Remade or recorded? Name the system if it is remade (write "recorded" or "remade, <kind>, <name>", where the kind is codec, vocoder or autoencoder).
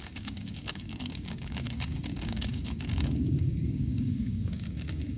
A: remade, codec, DAC